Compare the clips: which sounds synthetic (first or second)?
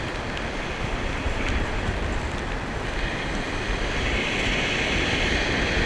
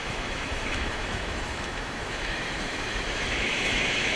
second